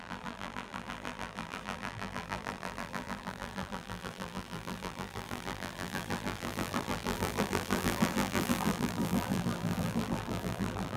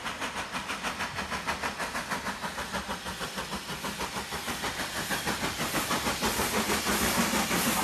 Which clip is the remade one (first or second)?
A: first